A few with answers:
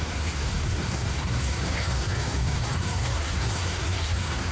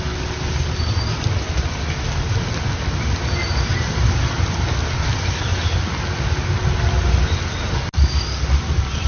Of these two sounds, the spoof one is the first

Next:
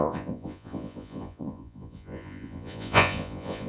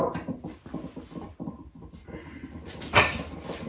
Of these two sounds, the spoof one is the first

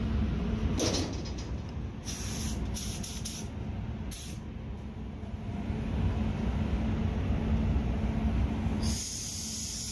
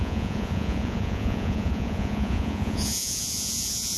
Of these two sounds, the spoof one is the second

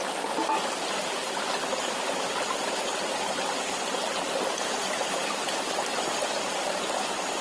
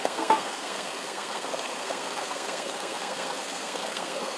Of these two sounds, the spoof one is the second